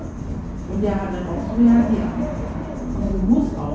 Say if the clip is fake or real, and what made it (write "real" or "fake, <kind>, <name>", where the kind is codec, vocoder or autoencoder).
real